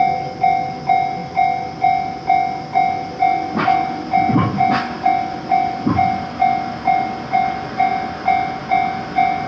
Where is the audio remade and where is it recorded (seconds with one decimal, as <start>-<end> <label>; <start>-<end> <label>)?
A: 0.0-9.5 recorded